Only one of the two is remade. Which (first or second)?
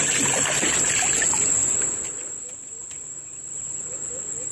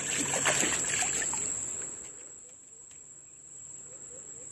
first